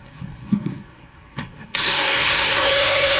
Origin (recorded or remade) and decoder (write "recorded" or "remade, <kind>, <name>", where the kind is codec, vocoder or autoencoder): remade, codec, SNAC